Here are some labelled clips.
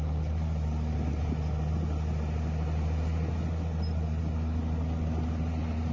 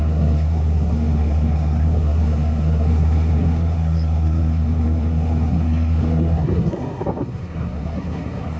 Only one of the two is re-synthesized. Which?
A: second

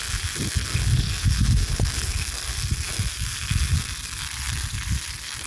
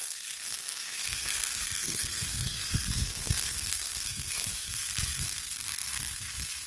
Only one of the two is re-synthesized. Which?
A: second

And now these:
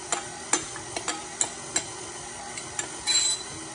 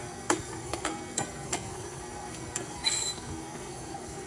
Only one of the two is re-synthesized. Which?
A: second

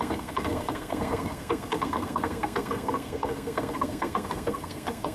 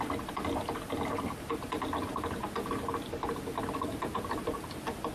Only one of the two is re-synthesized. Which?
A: first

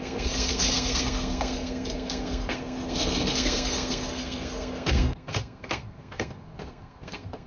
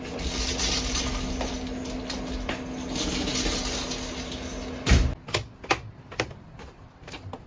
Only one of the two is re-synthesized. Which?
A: first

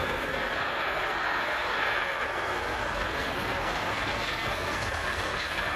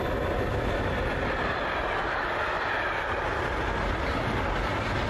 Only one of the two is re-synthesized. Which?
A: first